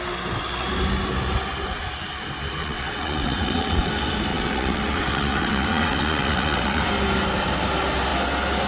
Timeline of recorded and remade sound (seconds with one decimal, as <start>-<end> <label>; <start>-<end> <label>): 0.0-2.6 recorded; 2.6-3.9 remade; 3.9-4.3 recorded; 4.3-6.9 remade; 6.9-8.7 recorded